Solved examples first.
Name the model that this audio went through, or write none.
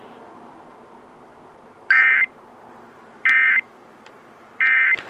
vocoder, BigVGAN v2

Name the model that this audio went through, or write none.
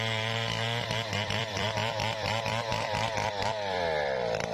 vocoder, BigVGAN v2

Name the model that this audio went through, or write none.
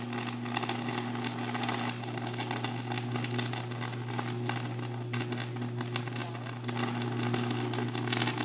none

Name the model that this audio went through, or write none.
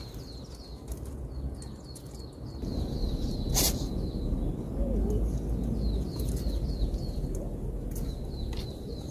none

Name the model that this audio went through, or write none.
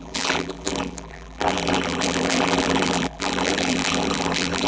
vocoder, BigVGAN v2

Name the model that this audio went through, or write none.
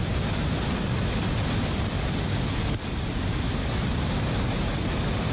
vocoder, BigVGAN v2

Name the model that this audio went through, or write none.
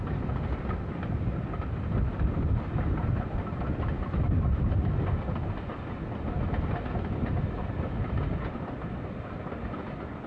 none